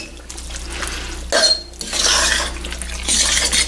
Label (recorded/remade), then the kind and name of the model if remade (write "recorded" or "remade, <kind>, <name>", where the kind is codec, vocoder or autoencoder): recorded